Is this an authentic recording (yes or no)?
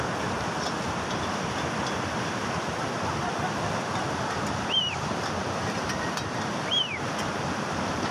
yes